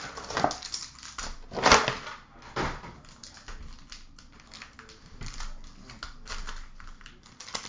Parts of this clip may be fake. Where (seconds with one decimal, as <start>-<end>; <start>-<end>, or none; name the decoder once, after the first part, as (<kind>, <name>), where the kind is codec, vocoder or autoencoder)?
none

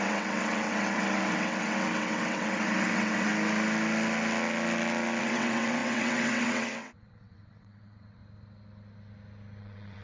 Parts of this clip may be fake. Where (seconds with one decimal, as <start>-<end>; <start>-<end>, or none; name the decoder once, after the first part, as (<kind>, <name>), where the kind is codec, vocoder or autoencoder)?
0.0-3.3 (vocoder, WaveNeXt); 5.2-8.2; 9.6-10.0